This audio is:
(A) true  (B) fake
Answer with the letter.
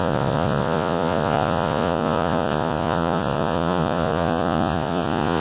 B